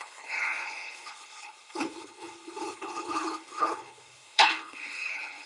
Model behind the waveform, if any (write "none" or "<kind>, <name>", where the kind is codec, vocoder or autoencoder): codec, HILCodec